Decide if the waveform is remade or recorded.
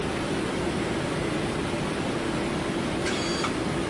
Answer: recorded